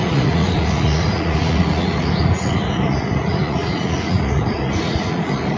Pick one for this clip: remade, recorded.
remade